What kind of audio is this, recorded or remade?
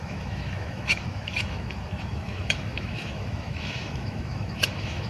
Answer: remade